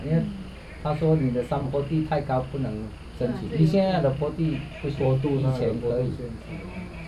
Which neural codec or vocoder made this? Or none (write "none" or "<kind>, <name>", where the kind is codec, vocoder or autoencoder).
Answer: none